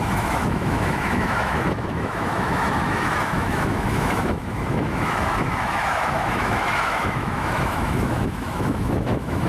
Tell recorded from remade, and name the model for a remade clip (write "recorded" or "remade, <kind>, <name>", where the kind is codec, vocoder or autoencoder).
remade, autoencoder, DAC-VAE